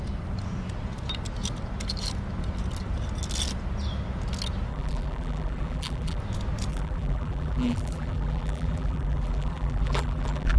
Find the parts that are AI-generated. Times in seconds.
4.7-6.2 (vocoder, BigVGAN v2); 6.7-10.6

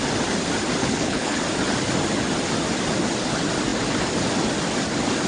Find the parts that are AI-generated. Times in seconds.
0.8-1.4 (codec, HILCodec)

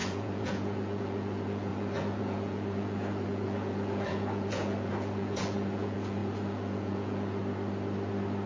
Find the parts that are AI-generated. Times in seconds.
0.0-7.4 (vocoder, Vocos)

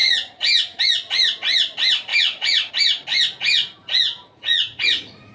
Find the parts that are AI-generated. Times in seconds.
0.0-0.8 (vocoder, Vocos); 2.1-2.7; 3.1-5.3

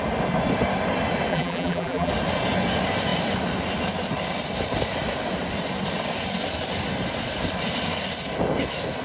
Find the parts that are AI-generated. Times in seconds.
1.3-2.1 (vocoder, BigVGAN v2)